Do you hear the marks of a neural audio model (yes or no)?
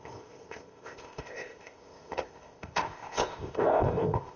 yes